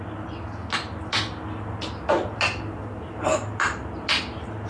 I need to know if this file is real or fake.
real